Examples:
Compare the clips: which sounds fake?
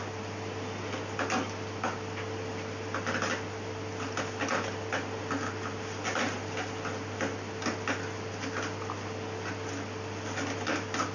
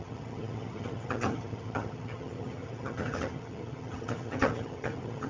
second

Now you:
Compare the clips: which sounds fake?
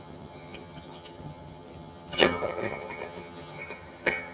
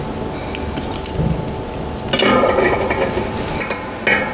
first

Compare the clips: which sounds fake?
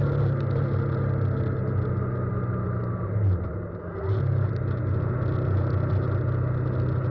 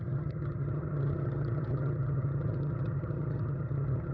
second